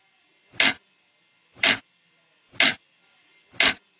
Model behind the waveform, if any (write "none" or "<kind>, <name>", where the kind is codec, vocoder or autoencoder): none